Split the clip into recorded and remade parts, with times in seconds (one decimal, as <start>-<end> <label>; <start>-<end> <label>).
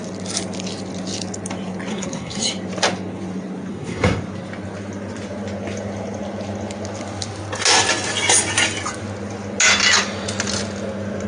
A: 0.0-1.9 recorded; 1.9-2.5 remade; 2.5-3.7 recorded; 3.7-4.2 remade; 4.2-11.3 recorded